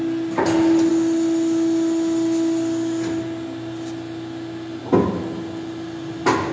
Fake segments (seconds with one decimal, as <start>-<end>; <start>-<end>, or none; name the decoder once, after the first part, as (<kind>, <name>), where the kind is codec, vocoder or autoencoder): none